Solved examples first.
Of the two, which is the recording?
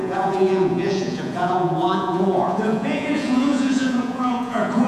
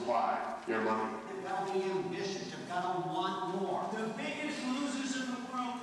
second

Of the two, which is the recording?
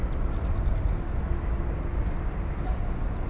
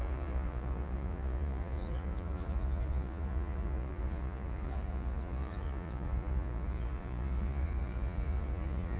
first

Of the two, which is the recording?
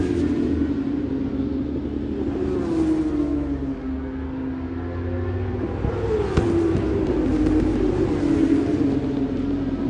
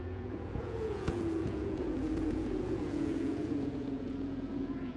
first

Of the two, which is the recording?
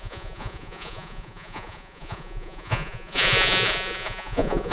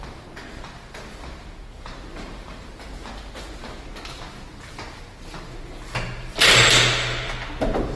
second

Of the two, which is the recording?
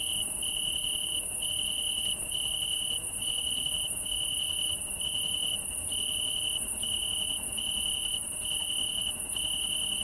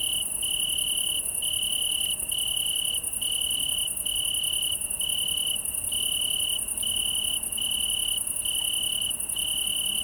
second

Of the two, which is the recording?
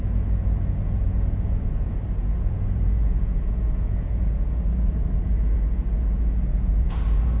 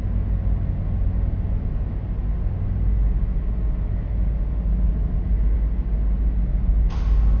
second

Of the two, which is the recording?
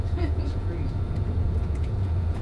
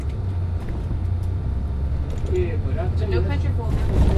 second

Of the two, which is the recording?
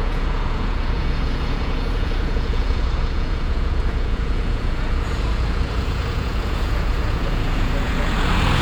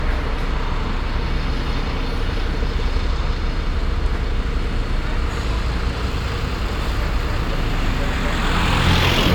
second